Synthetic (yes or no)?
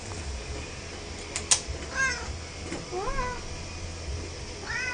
no